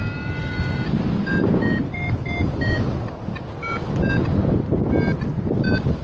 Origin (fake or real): real